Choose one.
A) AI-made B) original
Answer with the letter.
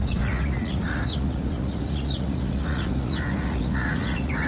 A